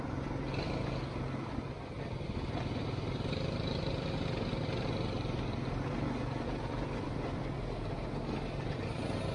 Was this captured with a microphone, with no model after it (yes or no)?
yes